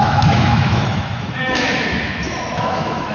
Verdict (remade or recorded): remade